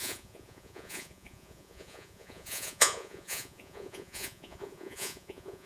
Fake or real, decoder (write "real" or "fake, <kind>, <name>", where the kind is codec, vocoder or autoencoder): fake, vocoder, Vocos